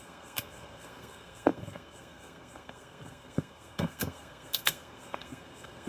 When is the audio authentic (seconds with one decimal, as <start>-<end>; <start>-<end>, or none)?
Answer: none

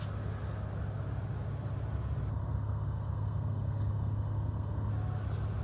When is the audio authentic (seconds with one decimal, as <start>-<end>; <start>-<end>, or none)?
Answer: 0.0-2.3; 4.9-5.6

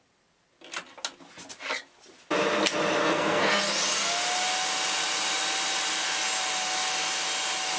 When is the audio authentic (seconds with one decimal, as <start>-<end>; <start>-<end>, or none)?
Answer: 0.0-3.0; 3.6-7.8

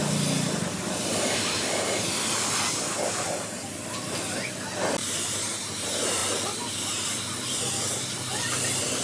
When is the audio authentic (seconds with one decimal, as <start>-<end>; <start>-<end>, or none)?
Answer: 0.0-9.0